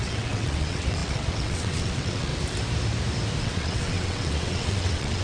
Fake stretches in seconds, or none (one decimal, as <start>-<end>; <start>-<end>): 0.0-2.3; 3.4-5.2